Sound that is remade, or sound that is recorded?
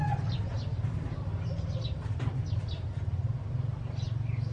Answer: recorded